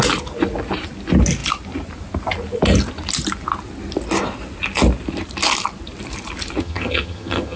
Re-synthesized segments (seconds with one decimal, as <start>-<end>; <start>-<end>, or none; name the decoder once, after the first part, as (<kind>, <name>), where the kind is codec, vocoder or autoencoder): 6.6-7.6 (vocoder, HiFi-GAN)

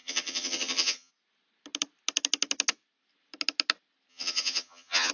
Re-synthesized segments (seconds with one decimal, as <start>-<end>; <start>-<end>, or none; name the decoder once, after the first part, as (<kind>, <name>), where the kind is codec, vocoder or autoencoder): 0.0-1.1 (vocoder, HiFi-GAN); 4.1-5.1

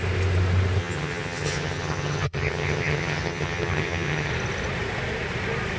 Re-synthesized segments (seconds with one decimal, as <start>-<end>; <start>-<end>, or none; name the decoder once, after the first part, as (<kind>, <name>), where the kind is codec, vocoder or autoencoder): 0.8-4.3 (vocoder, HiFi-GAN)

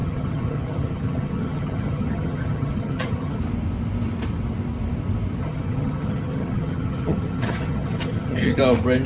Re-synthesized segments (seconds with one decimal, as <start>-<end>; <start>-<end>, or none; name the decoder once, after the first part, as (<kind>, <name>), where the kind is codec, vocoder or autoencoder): 0.0-3.4 (vocoder, HiFi-GAN); 5.4-8.6

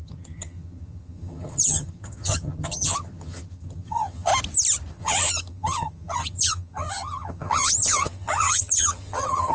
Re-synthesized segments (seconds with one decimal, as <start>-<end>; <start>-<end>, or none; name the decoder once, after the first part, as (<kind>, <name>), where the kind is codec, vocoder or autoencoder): 0.0-4.3 (vocoder, HiFi-GAN); 4.9-9.5

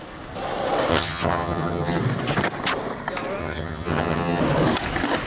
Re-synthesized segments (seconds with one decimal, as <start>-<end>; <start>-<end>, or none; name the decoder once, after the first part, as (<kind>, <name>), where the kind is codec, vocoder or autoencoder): 0.9-2.0 (vocoder, HiFi-GAN); 3.4-4.4